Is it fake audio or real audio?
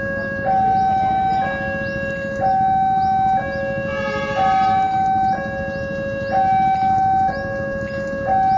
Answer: real